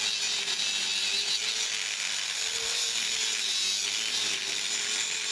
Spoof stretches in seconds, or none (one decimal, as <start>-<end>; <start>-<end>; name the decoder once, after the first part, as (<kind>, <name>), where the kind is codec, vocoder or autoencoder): none